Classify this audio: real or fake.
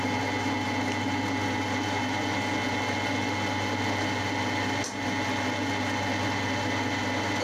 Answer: real